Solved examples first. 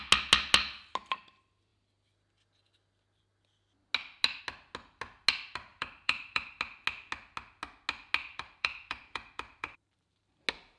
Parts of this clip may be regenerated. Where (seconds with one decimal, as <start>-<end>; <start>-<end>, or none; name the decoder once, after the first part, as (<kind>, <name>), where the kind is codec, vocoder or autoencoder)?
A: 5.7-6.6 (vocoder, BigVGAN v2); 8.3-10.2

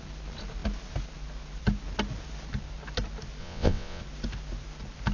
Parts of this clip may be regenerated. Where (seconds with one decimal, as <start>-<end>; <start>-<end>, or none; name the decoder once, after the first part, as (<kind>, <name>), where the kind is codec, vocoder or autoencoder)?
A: 3.4-4.0 (vocoder, WaveNeXt)

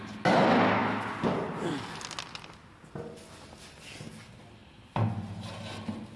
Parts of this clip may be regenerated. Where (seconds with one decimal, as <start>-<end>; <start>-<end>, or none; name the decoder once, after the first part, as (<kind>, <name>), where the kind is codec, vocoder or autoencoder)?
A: none